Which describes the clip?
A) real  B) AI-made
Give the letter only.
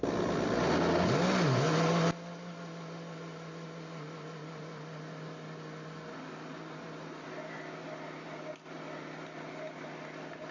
A